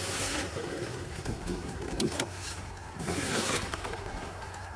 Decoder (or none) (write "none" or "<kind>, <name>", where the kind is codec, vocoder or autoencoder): codec, SNAC